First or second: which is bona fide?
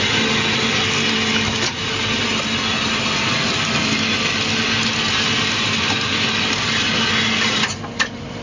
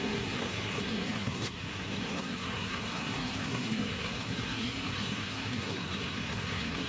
first